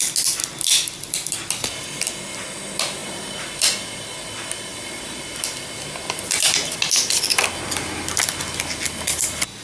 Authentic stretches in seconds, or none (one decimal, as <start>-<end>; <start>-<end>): 0.0-3.0; 3.5-9.6